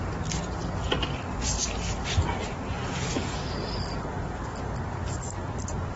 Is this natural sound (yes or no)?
yes